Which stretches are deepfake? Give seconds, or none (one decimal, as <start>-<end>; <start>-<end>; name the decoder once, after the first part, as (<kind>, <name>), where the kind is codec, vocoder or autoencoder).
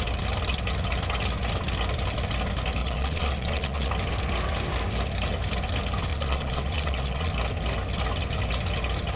2.8-3.9 (vocoder, Vocos); 6.1-7.3